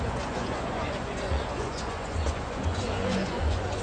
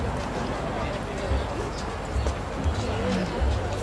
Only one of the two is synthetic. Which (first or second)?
first